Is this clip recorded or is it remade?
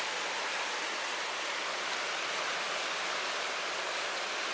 recorded